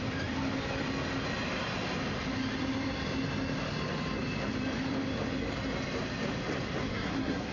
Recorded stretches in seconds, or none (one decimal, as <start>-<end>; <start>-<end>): 0.0-6.9